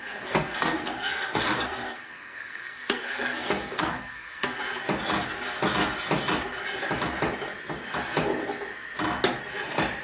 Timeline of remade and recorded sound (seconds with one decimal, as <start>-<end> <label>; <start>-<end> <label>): 0.0-4.6 remade; 4.6-10.0 recorded